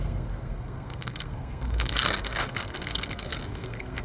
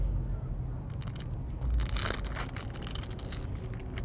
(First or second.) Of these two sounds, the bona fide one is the second